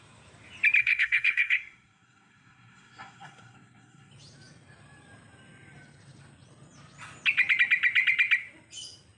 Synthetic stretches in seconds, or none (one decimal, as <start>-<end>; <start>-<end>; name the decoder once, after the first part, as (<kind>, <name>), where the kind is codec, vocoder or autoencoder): 0.8-4.1 (codec, SNAC)